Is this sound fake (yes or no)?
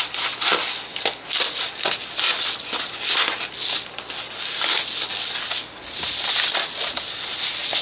no